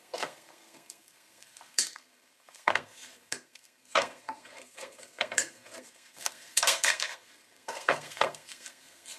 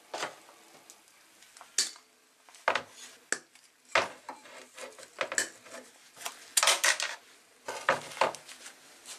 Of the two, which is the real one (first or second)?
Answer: second